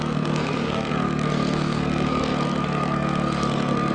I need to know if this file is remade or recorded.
remade